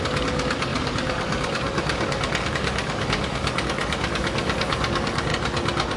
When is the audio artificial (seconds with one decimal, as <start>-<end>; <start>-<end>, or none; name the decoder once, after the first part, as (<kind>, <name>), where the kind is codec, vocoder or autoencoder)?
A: 0.0-5.3 (codec, DAC)